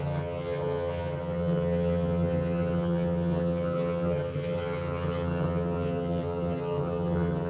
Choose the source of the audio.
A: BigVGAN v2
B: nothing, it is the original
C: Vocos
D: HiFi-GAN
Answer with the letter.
D